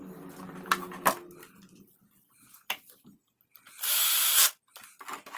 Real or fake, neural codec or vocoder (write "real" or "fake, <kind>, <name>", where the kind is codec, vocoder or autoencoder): real